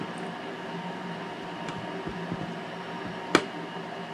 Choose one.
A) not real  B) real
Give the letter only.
B